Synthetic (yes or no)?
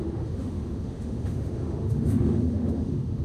yes